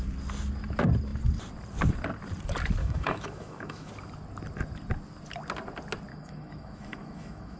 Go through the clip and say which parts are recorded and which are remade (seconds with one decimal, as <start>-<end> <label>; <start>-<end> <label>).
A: 0.0-2.8 recorded; 2.8-3.9 remade; 3.9-6.1 recorded; 6.1-7.6 remade